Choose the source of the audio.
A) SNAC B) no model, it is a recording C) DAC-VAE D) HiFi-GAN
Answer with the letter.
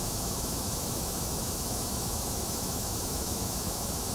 C